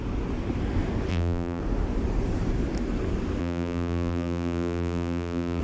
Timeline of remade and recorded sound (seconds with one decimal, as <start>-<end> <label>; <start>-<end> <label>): 0.0-1.1 recorded; 1.1-1.6 remade; 1.6-3.4 recorded; 3.4-5.6 remade